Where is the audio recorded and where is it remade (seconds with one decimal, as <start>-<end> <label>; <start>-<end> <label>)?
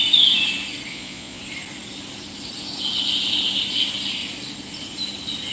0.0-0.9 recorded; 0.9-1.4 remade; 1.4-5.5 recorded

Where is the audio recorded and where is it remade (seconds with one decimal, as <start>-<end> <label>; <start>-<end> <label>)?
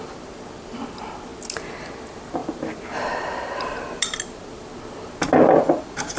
0.0-6.2 recorded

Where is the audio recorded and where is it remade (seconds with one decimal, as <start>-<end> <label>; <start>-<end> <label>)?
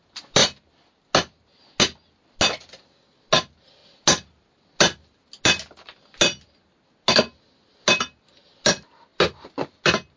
0.0-10.2 recorded